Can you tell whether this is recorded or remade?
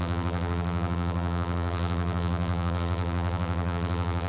remade